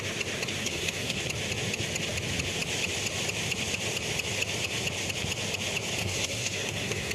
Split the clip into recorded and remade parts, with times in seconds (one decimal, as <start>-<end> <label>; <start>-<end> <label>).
0.0-0.6 recorded; 0.6-1.2 remade; 1.2-6.0 recorded; 6.0-7.1 remade